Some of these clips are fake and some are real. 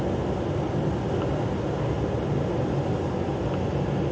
real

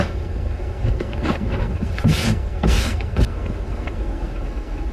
fake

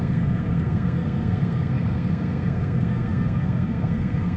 fake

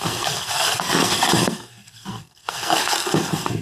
fake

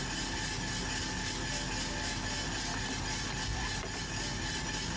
real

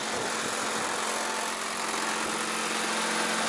real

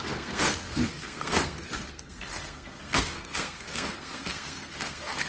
fake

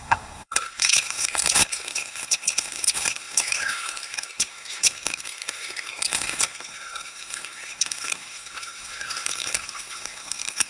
fake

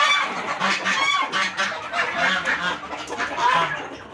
real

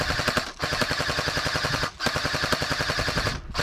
real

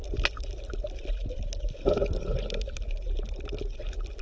real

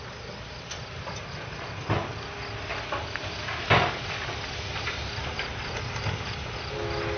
real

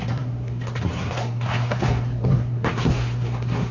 fake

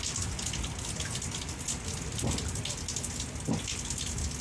real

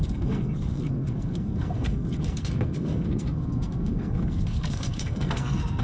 fake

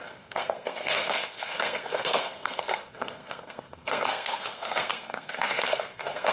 fake